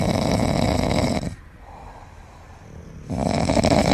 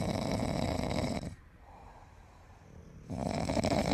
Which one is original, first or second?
first